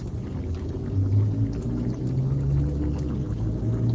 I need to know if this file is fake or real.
real